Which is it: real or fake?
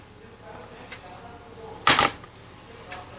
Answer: real